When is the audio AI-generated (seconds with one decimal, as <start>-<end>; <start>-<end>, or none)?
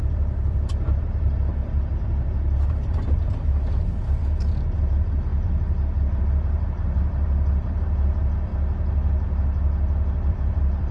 0.0-5.3; 6.2-8.5; 10.3-10.9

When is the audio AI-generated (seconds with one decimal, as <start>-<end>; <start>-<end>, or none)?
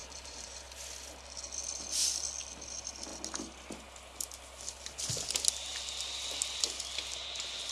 0.0-0.7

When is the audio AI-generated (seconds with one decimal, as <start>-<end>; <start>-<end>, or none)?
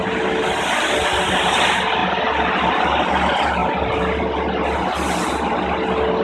2.0-2.7; 3.6-4.2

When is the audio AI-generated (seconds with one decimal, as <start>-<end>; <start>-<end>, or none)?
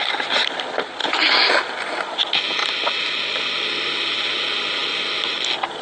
1.0-1.5; 2.6-3.9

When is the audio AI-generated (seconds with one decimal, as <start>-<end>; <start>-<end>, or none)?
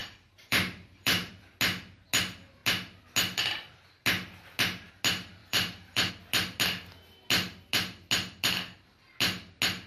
0.0-1.3; 5.4-6.1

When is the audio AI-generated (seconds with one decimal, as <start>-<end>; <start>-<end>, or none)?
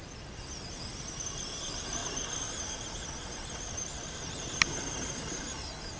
2.0-5.6